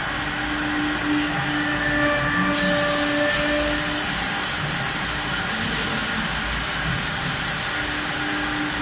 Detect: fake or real real